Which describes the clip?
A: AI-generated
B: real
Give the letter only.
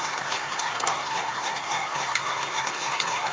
A